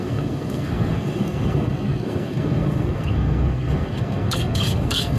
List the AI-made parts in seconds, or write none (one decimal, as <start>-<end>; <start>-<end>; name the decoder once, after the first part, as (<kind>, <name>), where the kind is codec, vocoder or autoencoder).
0.0-5.2 (codec, SNAC)